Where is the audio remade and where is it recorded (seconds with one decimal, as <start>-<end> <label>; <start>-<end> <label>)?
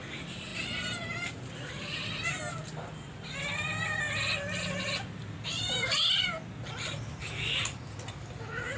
0.0-8.8 recorded